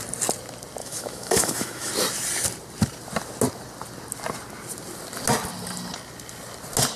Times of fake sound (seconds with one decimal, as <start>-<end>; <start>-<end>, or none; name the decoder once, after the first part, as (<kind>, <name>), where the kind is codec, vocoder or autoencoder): 0.8-1.9 (autoencoder, DAC-VAE)